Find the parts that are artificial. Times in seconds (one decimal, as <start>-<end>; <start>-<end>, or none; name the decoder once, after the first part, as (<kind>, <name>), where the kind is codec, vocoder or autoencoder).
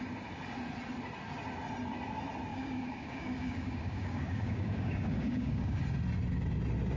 2.5-5.8 (codec, DAC)